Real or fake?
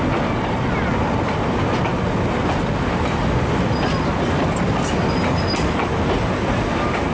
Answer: real